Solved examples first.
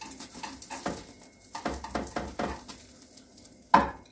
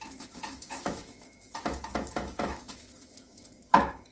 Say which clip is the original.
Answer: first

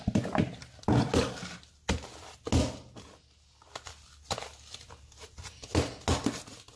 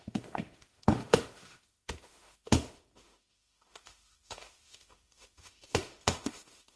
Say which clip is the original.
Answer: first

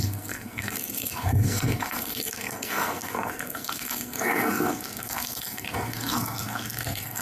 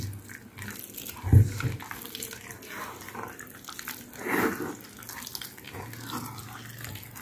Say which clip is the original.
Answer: second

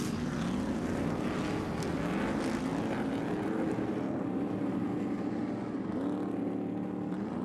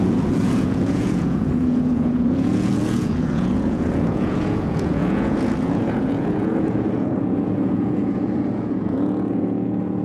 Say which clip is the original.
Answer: first